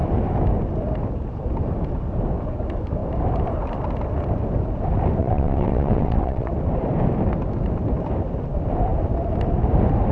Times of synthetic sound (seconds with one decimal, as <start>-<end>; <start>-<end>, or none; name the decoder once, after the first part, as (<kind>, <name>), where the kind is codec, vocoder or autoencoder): 5.2-6.5 (vocoder, WaveNeXt)